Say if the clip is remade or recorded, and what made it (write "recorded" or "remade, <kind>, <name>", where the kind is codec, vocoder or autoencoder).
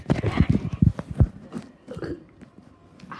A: recorded